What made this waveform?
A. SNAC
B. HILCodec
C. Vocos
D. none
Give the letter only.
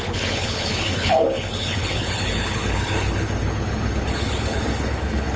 B